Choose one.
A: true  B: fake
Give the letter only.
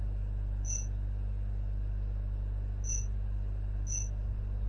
A